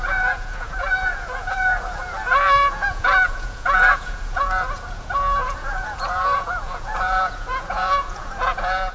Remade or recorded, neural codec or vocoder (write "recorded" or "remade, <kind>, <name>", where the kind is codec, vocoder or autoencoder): remade, vocoder, Vocos